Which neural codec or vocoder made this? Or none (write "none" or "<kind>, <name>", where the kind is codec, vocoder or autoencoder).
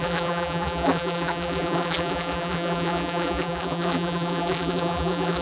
vocoder, BigVGAN v2